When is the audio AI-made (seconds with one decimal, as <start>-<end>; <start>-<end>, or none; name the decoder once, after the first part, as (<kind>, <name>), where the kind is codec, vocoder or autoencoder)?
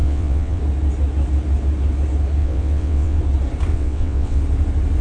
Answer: 0.0-0.6 (vocoder, WaveNeXt); 2.4-3.2; 3.7-4.4